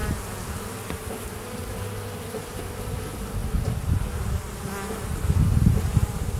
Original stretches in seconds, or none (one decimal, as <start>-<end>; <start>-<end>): 0.0-1.8